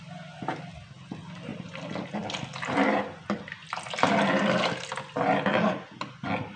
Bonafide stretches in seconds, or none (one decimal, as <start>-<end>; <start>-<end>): 0.0-6.6